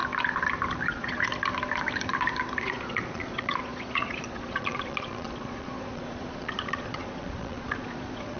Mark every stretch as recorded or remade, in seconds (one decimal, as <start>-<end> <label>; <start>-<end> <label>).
0.0-0.9 recorded; 0.9-1.3 remade; 1.3-2.6 recorded; 2.6-8.4 remade

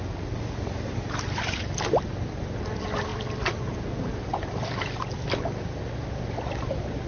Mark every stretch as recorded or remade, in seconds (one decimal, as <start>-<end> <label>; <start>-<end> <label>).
0.0-7.1 recorded